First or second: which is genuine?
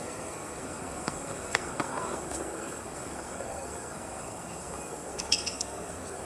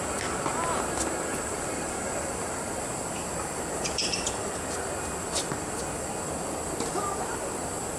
second